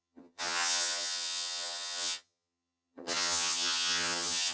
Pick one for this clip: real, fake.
fake